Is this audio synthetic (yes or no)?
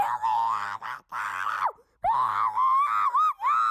no